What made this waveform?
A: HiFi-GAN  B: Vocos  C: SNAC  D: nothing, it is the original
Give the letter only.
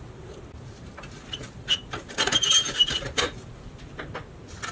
D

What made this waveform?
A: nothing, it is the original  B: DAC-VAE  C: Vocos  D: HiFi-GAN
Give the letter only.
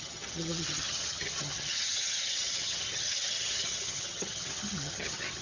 D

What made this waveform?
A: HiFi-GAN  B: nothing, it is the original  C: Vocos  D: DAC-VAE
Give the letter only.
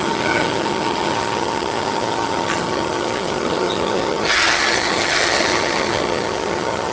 A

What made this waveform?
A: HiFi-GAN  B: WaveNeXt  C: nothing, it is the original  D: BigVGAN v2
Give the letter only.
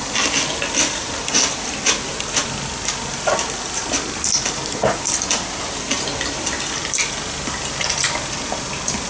C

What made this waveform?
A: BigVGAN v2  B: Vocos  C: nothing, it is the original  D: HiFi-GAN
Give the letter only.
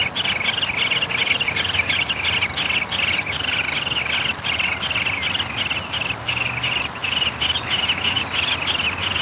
C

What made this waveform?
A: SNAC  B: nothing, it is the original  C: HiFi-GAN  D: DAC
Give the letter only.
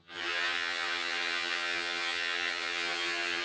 C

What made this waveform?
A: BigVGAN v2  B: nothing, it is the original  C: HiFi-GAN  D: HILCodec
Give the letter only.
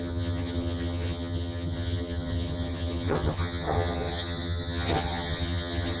C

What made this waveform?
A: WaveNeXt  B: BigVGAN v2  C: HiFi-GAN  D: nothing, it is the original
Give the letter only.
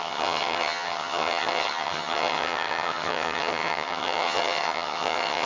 C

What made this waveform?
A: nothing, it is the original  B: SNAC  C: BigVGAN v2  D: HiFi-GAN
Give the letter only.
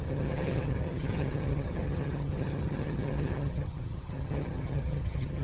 D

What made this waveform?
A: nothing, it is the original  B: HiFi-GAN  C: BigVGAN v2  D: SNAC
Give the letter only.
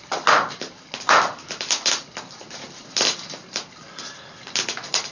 A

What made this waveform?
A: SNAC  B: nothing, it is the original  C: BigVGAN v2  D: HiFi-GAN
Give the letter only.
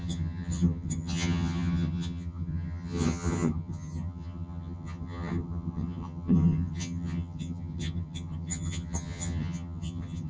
D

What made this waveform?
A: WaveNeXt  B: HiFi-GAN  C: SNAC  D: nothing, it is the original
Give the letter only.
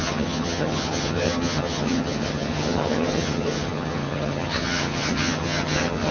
B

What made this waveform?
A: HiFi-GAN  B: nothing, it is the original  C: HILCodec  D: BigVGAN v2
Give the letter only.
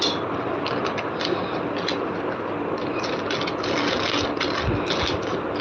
B